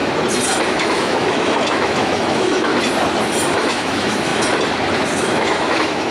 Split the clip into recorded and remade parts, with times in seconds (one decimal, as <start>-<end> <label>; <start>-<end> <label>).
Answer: 0.0-0.7 recorded; 0.7-2.7 remade; 2.7-3.5 recorded; 3.5-4.3 remade; 4.3-5.2 recorded; 5.2-6.1 remade